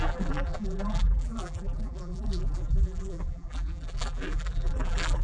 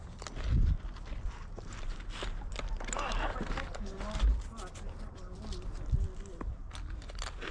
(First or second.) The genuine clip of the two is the second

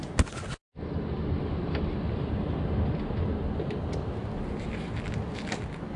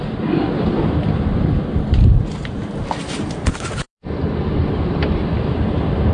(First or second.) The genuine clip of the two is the first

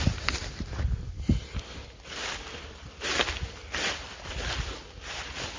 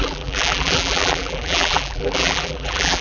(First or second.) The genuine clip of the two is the first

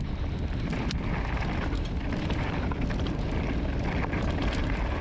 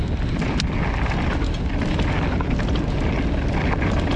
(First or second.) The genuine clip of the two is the second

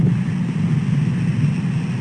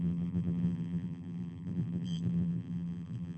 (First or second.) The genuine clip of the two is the first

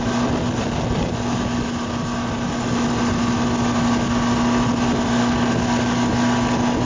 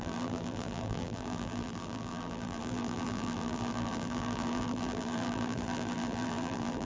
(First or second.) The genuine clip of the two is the first